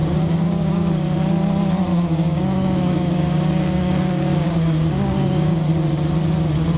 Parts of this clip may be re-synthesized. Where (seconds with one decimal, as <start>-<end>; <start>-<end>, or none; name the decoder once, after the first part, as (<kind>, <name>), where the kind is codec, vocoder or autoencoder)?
0.0-0.9 (codec, DAC); 1.9-5.7